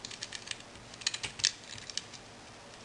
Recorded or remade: recorded